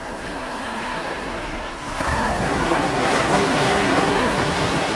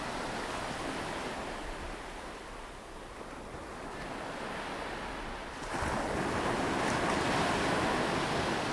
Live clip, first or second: second